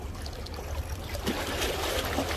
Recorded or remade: recorded